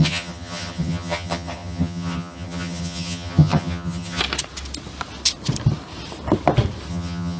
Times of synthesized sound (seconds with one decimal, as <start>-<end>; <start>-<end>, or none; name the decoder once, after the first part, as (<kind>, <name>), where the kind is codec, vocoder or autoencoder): 0.0-4.2 (vocoder, HiFi-GAN); 6.9-7.4